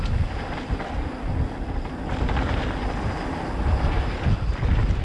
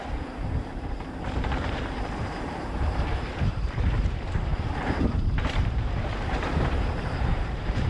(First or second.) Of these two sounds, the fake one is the second